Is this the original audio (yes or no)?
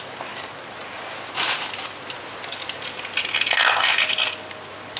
yes